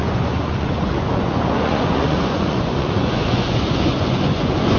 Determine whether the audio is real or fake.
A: fake